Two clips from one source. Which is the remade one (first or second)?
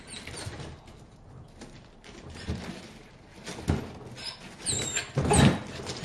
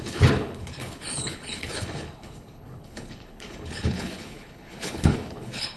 second